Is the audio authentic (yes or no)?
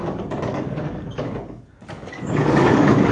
no